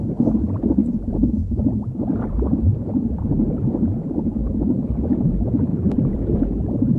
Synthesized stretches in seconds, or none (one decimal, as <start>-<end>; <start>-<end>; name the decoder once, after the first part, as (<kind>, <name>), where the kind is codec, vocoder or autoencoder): 5.7-6.6 (vocoder, BigVGAN v2)